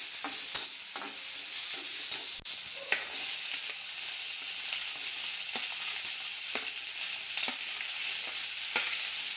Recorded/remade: recorded